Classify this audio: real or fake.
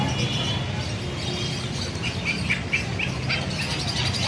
real